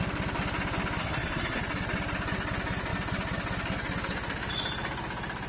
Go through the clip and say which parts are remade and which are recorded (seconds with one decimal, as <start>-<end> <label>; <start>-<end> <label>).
0.0-1.0 recorded; 1.0-1.6 remade; 1.6-5.5 recorded